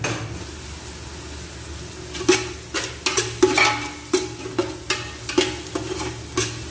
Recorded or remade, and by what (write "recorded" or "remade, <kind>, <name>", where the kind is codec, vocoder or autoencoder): recorded